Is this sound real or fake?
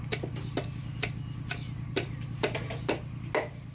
real